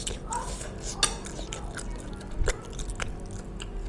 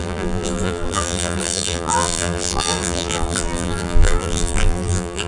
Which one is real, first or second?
first